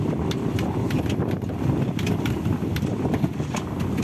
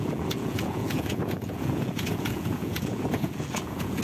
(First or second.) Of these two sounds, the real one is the first